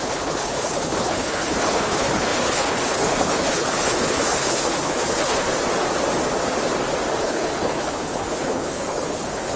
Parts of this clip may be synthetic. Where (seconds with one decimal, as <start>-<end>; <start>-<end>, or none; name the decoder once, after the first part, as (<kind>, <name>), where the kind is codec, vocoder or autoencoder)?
0.0-5.5 (codec, HILCodec); 7.2-9.6